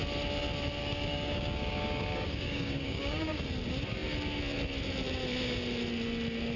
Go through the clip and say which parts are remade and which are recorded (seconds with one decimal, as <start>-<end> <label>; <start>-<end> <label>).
0.0-0.8 recorded; 0.8-3.4 remade; 3.4-6.6 recorded